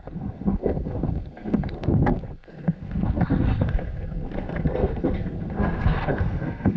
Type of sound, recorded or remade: remade